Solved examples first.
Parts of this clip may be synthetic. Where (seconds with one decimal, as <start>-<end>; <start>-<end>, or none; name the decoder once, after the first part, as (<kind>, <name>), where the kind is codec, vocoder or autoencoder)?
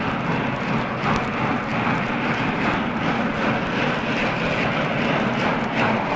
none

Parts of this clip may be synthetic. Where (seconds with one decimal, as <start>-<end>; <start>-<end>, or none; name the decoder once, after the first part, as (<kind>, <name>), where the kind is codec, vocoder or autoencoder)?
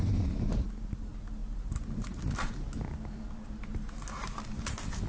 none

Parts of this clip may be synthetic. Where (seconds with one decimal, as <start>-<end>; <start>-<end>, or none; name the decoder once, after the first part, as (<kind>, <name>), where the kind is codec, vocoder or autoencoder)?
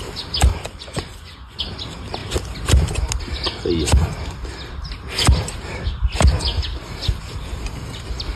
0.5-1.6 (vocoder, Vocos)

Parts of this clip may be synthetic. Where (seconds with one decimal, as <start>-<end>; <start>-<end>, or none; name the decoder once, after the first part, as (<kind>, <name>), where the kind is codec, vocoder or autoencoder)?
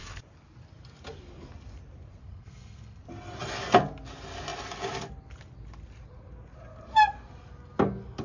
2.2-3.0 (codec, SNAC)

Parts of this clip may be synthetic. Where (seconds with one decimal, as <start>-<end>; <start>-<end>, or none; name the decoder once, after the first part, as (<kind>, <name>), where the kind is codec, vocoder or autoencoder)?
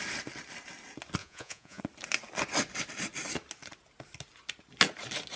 1.2-1.8 (vocoder, Vocos)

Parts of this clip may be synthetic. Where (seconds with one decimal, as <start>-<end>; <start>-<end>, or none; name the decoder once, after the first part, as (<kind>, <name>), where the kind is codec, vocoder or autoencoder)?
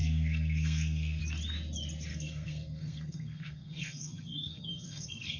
0.0-1.2 (codec, SNAC); 2.1-5.4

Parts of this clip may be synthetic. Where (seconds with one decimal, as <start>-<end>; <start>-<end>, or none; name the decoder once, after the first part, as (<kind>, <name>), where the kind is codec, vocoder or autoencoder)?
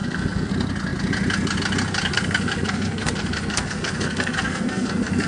0.0-0.5 (codec, SNAC); 2.1-5.3